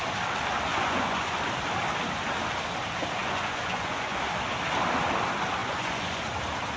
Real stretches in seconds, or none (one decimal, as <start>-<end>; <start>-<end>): 0.0-0.7; 1.4-3.2; 4.2-5.6; 6.2-6.8